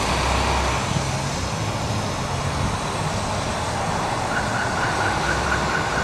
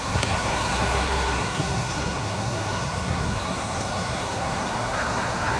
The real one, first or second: first